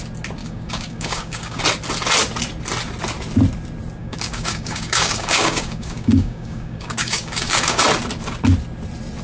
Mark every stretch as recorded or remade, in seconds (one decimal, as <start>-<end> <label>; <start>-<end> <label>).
0.0-0.4 recorded; 0.4-1.6 remade; 1.6-4.0 recorded; 4.0-7.8 remade; 7.8-9.2 recorded